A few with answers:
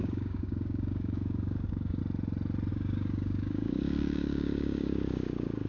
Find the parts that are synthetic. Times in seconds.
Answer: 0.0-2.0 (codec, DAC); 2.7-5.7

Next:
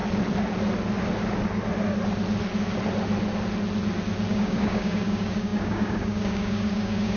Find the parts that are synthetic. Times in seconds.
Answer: 4.3-7.2 (codec, DAC)

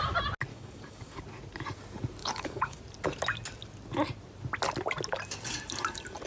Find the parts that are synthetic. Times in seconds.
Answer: 0.5-1.2 (codec, DAC); 2.2-2.8

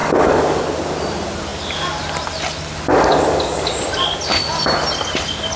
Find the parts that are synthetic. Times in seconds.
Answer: 0.0-0.6 (codec, DAC); 2.9-3.7

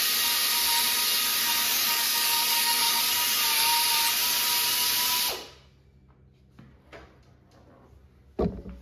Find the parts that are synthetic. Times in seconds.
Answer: 1.7-3.0 (codec, DAC)